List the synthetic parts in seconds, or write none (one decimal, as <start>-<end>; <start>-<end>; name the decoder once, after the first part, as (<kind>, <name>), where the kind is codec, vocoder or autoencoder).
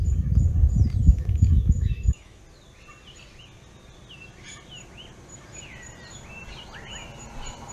1.0-2.4 (autoencoder, DAC-VAE)